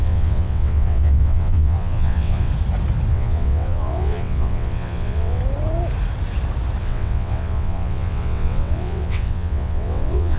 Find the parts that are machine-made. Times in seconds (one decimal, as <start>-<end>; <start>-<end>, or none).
0.0-2.5; 3.1-5.4; 6.8-10.4